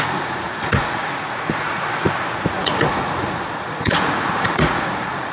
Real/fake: fake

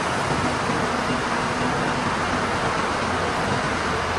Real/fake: real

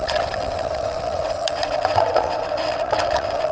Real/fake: fake